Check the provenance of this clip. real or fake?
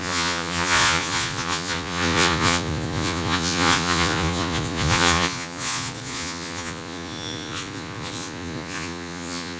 fake